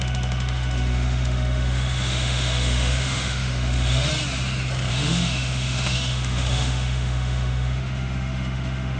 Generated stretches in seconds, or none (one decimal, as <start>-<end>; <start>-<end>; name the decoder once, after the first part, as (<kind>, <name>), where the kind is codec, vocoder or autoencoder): 0.0-4.1 (autoencoder, DAC-VAE); 4.9-9.0